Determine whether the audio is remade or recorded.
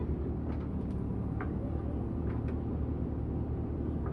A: recorded